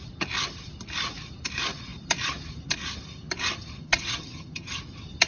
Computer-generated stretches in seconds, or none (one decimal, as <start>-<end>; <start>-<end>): 3.8-4.8